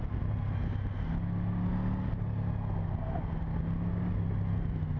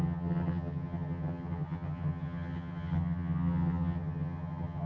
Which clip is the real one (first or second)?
first